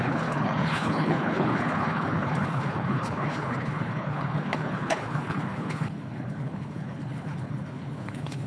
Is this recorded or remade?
remade